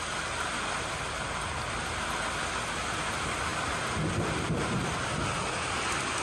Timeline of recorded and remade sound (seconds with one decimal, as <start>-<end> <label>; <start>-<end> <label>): 0.0-6.2 recorded